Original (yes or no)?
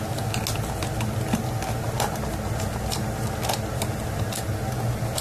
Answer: yes